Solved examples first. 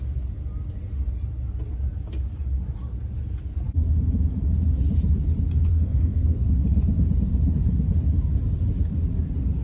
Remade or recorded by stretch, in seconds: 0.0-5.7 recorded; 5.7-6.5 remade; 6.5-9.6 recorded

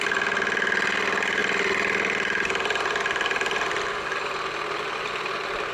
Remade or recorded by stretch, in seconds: 0.0-5.7 recorded

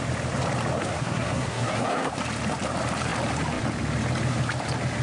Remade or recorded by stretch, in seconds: 0.0-0.8 recorded; 0.8-2.1 remade; 2.1-5.0 recorded

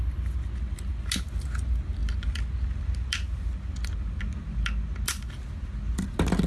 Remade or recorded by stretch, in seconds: 0.0-6.5 recorded

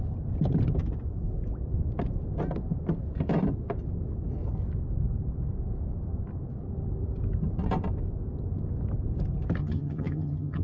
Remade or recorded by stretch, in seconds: 0.0-9.6 recorded; 9.6-10.6 remade

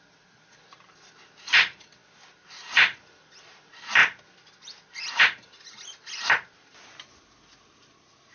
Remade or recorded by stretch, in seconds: 0.0-8.3 recorded

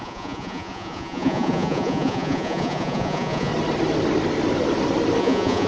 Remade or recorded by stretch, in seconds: 0.0-3.5 remade; 3.5-5.2 recorded; 5.2-5.7 remade